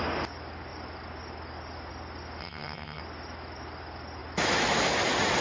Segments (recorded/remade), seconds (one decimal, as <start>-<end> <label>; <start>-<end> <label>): 0.0-2.4 recorded; 2.4-3.0 remade; 3.0-5.4 recorded